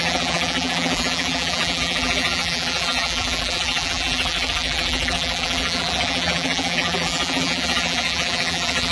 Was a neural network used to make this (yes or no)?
yes